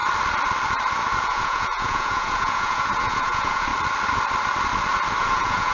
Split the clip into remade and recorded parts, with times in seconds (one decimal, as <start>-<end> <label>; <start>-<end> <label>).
0.0-1.2 recorded; 1.2-3.7 remade; 3.7-5.2 recorded; 5.2-5.7 remade